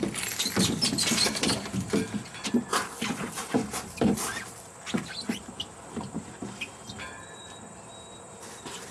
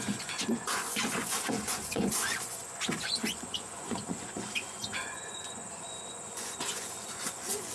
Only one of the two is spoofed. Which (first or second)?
second